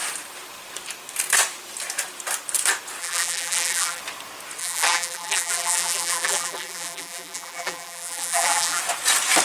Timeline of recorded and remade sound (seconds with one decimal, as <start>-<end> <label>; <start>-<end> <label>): 0.0-3.0 recorded; 3.0-4.0 remade; 4.0-4.6 recorded; 4.6-8.8 remade; 8.8-9.4 recorded